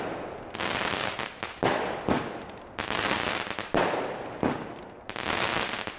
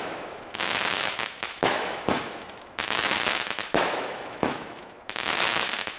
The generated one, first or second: second